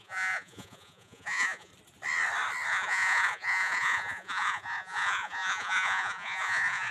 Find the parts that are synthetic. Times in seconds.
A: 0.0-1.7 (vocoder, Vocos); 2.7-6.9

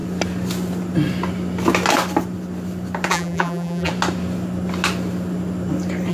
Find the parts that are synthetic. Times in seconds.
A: 3.1-3.9 (vocoder, BigVGAN v2)

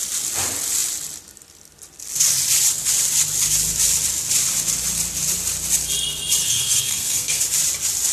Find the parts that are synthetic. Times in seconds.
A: 6.4-7.4 (codec, SNAC)

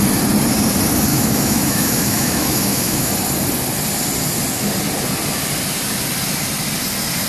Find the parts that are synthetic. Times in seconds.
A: 1.1-3.1 (autoencoder, DAC-VAE)

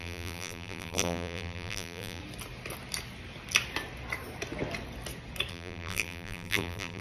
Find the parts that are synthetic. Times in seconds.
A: 0.0-2.2 (vocoder, BigVGAN v2); 5.5-7.0